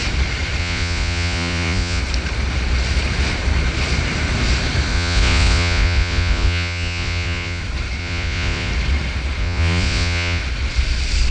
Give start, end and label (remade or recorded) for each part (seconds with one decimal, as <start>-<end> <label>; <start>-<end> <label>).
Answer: 0.0-0.6 recorded; 0.6-2.0 remade; 2.0-4.9 recorded; 4.9-7.6 remade; 7.6-8.0 recorded; 8.0-8.7 remade; 8.7-9.4 recorded; 9.4-10.4 remade; 10.4-11.3 recorded